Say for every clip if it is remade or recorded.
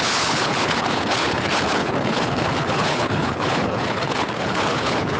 remade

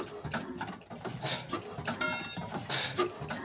recorded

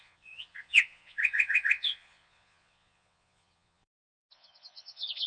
remade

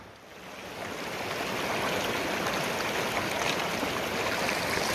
recorded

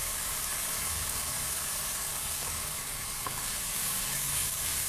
remade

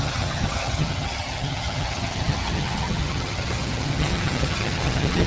remade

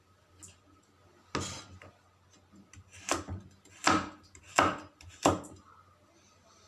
recorded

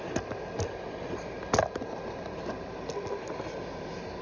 recorded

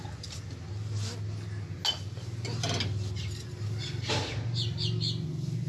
recorded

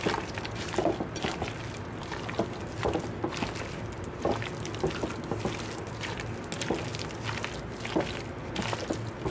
recorded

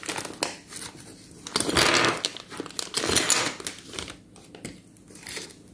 recorded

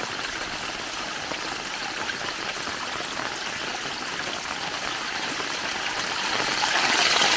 recorded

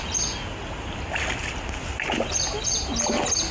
recorded